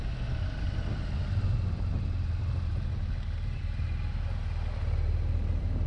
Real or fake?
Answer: real